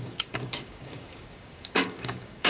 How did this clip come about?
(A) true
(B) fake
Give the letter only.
B